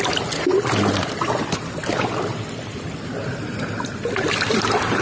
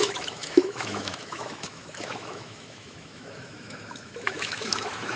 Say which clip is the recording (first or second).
first